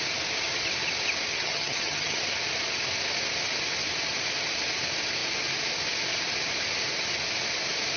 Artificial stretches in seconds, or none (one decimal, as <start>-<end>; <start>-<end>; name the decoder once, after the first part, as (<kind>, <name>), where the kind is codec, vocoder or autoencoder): 1.3-2.2 (vocoder, HiFi-GAN)